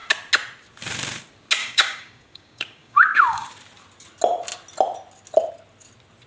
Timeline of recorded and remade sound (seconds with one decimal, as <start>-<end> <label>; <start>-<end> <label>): 0.0-1.6 recorded; 1.6-3.5 remade; 3.5-6.3 recorded